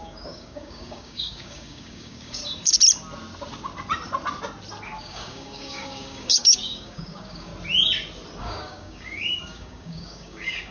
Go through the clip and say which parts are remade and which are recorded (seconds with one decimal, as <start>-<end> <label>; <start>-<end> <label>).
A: 0.0-2.4 remade; 2.4-5.0 recorded; 5.0-7.5 remade; 7.5-8.4 recorded; 8.4-10.7 remade